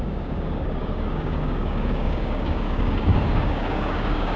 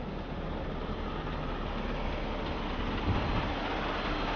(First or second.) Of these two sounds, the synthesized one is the first